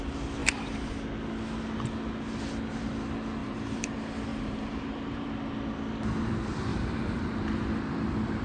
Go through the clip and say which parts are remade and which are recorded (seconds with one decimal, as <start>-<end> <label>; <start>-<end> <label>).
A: 0.0-0.4 recorded; 0.4-1.0 remade; 1.0-3.4 recorded; 3.4-3.9 remade; 3.9-4.3 recorded; 4.3-5.3 remade; 5.3-6.7 recorded; 6.7-7.2 remade; 7.2-8.4 recorded